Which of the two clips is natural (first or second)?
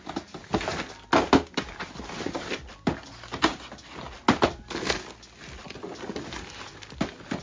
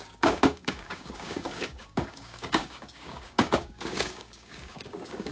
first